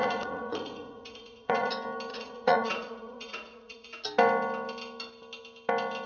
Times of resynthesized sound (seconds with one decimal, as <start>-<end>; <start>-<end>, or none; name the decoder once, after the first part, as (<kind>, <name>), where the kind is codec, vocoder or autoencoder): 0.0-1.7 (vocoder, Vocos); 2.1-3.9